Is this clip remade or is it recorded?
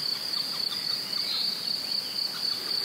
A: recorded